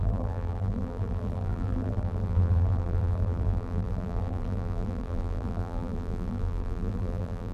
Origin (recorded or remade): remade